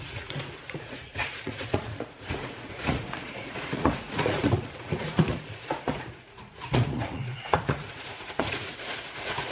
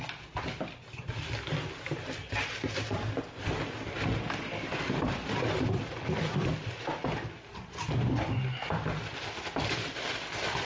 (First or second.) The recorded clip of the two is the second